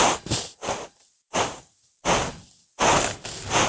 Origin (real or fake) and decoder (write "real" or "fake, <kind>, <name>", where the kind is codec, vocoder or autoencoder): real